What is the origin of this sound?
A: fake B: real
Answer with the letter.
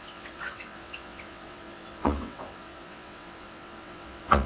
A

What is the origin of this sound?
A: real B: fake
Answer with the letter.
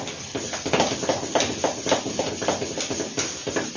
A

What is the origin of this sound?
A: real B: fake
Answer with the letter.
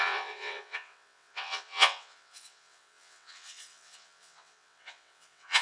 B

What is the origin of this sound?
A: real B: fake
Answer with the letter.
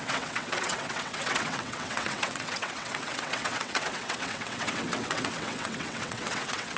B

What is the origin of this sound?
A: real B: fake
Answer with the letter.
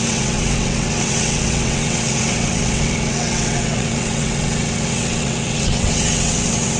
B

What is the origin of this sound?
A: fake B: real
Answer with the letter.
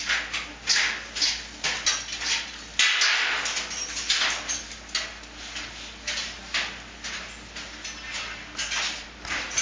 B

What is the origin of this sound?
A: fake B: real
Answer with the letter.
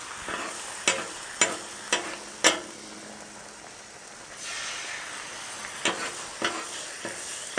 B